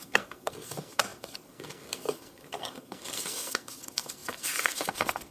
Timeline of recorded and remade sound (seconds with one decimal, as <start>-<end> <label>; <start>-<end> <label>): 0.0-5.3 remade